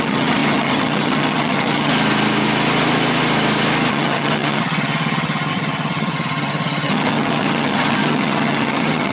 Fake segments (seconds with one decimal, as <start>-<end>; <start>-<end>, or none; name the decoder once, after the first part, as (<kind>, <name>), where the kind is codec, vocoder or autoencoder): 0.0-1.9 (vocoder, HiFi-GAN); 3.9-9.1